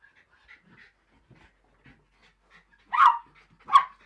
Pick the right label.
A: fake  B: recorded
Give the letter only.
B